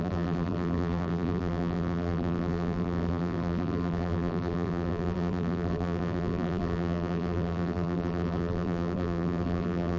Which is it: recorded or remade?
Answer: remade